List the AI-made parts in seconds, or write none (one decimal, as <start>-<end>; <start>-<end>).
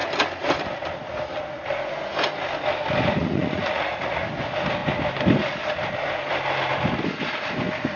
3.2-4.2